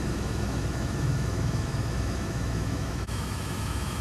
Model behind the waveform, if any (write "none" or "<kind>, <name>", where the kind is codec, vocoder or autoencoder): autoencoder, DAC-VAE